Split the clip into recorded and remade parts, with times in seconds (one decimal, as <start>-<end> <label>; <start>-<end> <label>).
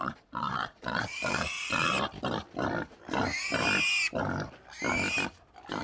0.0-1.9 remade; 1.9-5.8 recorded